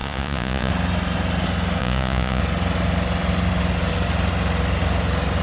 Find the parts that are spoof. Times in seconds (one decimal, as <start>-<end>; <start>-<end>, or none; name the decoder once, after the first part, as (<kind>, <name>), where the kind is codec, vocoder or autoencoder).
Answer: 0.0-0.7 (vocoder, Vocos); 1.8-2.4